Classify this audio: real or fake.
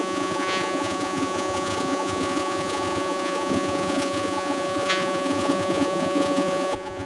fake